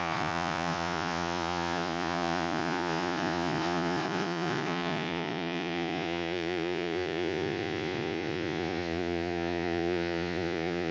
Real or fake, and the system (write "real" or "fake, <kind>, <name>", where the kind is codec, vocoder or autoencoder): fake, vocoder, Vocos